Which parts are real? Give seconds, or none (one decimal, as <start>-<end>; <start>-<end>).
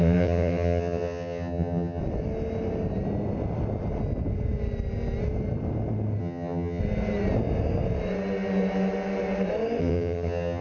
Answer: 2.0-6.2; 6.8-9.8